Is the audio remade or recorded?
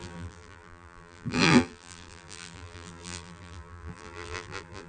remade